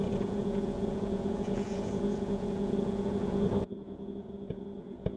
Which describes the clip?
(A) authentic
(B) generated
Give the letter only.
B